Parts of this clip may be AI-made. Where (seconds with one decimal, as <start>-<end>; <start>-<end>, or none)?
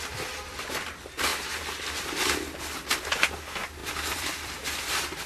3.8-4.8